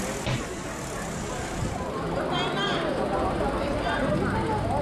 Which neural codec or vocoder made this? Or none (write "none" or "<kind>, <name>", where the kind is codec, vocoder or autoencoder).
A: none